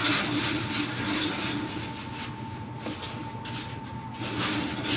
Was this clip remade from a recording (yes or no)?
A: no